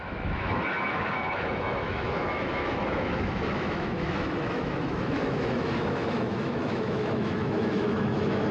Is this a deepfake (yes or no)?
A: yes